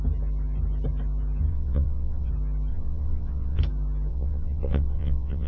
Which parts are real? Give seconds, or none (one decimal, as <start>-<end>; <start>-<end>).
0.0-1.5; 2.3-2.7; 3.6-4.1